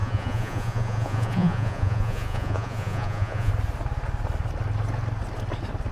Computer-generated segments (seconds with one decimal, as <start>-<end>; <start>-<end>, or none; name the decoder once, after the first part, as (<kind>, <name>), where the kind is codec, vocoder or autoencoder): 0.0-3.5 (vocoder, Vocos)